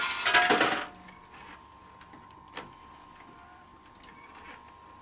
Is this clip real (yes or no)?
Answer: yes